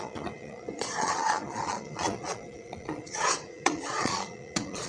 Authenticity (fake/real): fake